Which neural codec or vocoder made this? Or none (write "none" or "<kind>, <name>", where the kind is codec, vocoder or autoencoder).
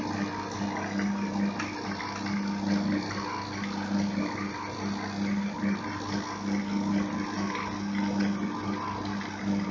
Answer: none